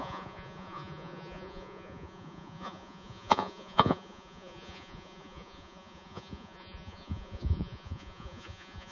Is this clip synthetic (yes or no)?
yes